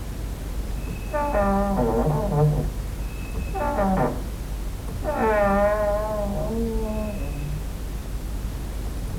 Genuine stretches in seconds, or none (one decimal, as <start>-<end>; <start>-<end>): 0.0-9.2